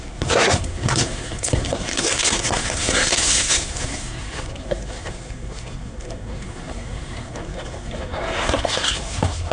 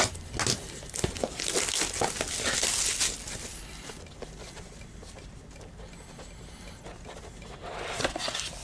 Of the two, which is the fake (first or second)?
first